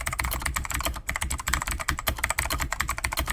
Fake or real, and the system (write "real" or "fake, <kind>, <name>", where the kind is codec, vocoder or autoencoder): fake, vocoder, BigVGAN v2